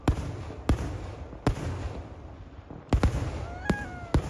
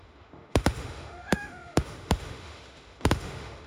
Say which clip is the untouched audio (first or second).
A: first